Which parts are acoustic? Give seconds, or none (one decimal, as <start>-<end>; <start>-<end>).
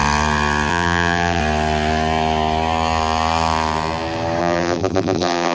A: 0.0-0.7; 1.4-4.4